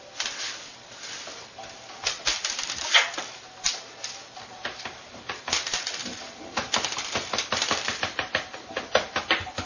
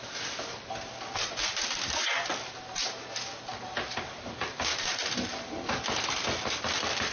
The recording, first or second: second